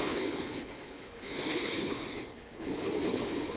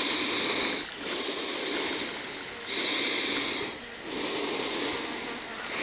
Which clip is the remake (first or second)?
first